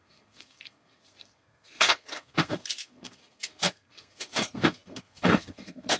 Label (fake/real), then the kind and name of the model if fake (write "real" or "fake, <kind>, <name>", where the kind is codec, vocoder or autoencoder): fake, codec, SNAC